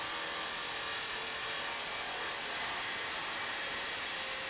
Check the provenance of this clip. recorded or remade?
recorded